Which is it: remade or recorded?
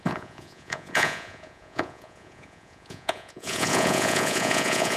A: remade